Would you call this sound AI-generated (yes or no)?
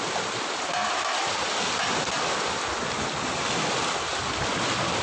no